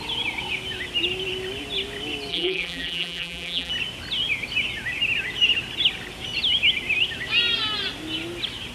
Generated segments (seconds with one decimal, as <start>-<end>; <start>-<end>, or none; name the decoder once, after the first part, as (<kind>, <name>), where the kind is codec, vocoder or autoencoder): 2.3-3.7 (vocoder, BigVGAN v2)